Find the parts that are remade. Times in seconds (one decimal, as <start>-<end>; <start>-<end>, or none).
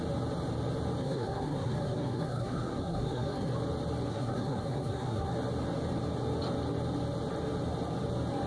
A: 1.0-3.5; 4.1-5.3